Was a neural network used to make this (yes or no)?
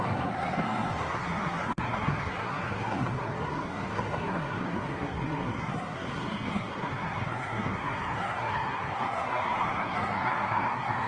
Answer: yes